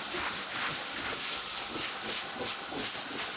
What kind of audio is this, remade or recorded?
recorded